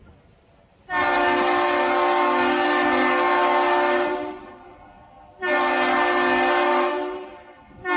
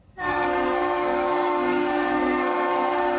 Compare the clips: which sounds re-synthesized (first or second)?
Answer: second